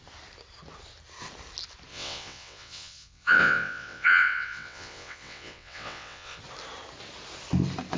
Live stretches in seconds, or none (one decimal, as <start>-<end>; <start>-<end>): 0.0-1.9; 6.4-8.0